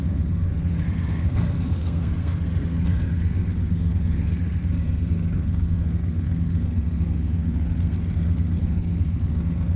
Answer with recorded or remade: remade